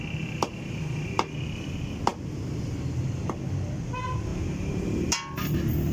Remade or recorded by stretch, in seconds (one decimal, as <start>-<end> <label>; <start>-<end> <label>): 0.0-5.9 recorded